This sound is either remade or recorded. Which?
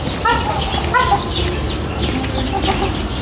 recorded